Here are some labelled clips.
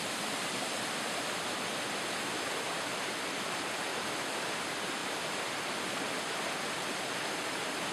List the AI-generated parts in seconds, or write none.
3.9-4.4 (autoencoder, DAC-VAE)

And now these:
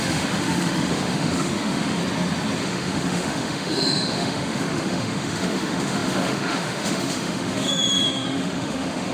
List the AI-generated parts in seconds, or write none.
0.0-2.0 (autoencoder, DAC-VAE); 2.6-9.1

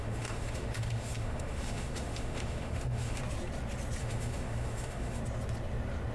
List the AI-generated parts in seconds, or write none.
0.0-3.2 (autoencoder, DAC-VAE); 4.0-5.2

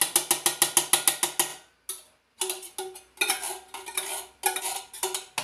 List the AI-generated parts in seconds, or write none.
none

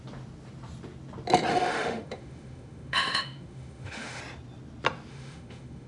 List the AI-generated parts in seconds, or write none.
1.5-4.2 (autoencoder, DAC-VAE); 5.1-5.9

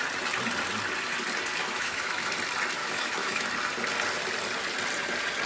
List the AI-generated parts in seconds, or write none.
1.6-2.3 (autoencoder, DAC-VAE); 2.8-3.5

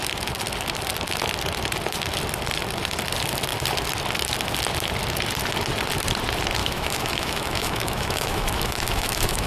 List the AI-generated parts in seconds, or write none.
6.6-9.5 (autoencoder, DAC-VAE)